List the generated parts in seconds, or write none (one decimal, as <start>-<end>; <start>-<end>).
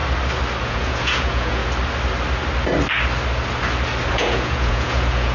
0.6-1.6; 4.1-5.3